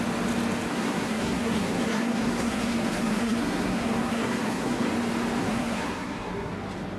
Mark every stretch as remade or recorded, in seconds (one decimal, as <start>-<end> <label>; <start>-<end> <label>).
0.0-0.7 recorded; 0.7-4.9 remade; 4.9-5.4 recorded; 5.4-6.5 remade; 6.5-7.0 recorded